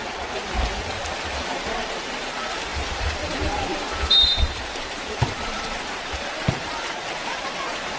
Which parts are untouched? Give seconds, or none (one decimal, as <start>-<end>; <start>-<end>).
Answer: 0.4-1.0